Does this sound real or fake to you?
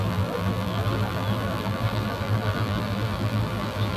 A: fake